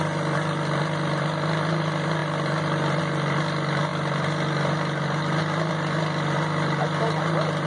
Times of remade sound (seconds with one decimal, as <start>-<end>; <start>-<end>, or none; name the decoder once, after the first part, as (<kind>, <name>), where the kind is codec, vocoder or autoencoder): none